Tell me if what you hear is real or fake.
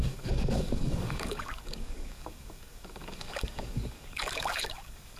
fake